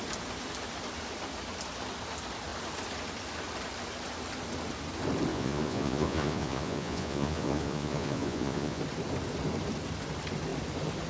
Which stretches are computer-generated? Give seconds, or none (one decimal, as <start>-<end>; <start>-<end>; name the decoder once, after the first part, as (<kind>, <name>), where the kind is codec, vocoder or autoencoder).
5.3-8.8 (vocoder, Vocos)